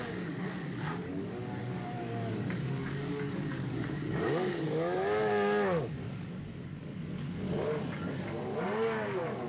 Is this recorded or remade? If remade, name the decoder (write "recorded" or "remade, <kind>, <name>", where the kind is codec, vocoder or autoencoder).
remade, codec, DAC